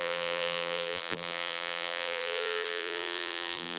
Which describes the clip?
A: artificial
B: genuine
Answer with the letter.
A